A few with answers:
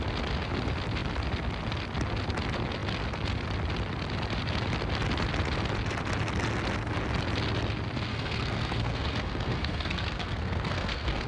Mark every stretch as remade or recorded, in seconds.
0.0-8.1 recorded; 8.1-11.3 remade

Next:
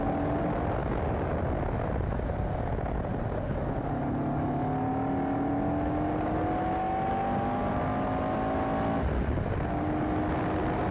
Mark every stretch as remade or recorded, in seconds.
0.0-10.9 recorded

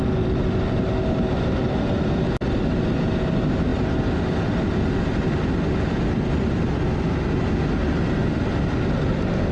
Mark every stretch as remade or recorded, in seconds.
0.0-9.5 recorded

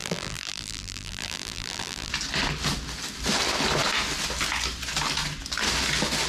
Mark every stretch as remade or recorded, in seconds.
0.0-2.1 remade; 2.1-6.3 recorded

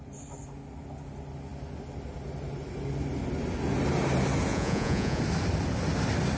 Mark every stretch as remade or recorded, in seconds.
0.0-4.5 recorded; 4.5-5.2 remade; 5.2-6.4 recorded

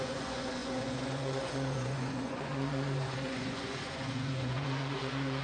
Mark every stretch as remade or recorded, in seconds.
0.0-5.4 remade

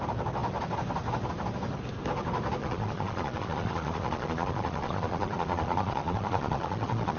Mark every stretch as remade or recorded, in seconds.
0.0-2.6 recorded; 2.6-7.2 remade

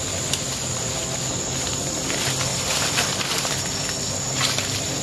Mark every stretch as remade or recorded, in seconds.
0.0-5.0 recorded